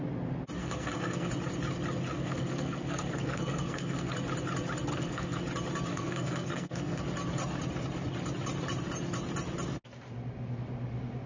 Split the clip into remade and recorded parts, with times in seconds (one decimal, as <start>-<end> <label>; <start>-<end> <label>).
0.0-0.6 recorded; 0.6-1.3 remade; 1.3-2.1 recorded; 2.1-4.1 remade; 4.1-4.9 recorded; 4.9-5.4 remade; 5.4-5.9 recorded; 5.9-7.0 remade; 7.0-11.3 recorded